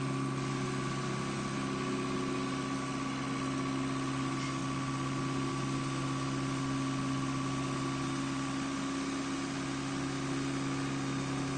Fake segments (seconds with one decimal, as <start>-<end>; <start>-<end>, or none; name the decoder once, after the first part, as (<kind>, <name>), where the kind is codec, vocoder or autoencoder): none